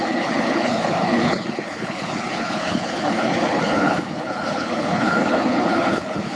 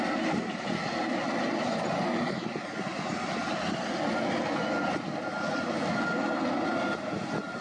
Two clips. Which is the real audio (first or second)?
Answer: second